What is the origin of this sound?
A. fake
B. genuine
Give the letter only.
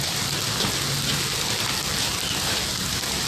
B